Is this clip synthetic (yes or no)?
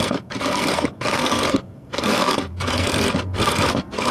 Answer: yes